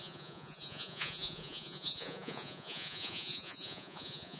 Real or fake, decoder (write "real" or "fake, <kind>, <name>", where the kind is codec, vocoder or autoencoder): fake, vocoder, Vocos